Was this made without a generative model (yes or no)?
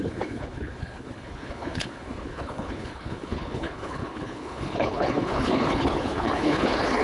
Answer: no